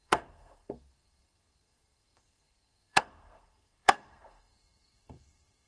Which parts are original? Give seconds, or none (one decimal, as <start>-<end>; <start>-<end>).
none